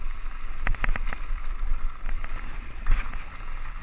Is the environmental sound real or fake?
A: real